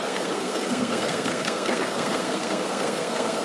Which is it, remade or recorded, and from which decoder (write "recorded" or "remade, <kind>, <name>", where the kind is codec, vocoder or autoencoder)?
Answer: remade, codec, SNAC